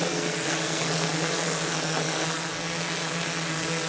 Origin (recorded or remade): remade